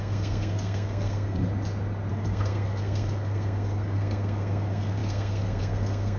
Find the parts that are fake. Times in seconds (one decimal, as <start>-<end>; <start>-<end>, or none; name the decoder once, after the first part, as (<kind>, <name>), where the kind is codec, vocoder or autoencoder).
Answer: 0.0-1.4 (codec, SNAC); 2.1-6.2